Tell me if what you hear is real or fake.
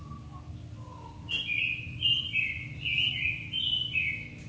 real